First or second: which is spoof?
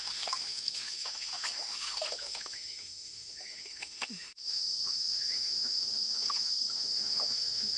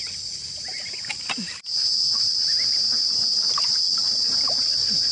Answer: first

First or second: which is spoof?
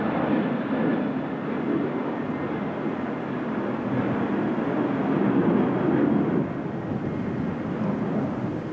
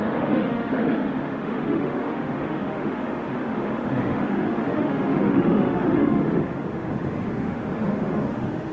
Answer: second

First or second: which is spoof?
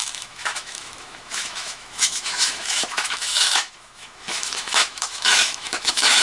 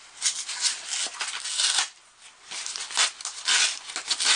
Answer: first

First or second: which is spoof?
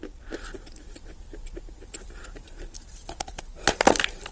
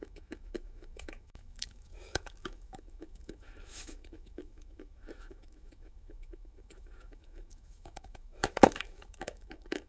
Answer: second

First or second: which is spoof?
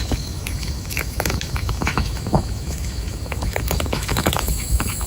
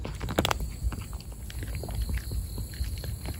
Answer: first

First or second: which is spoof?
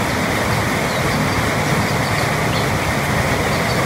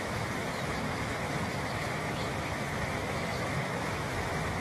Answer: second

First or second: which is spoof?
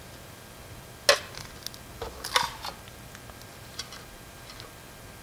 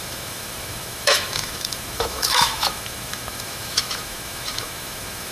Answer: second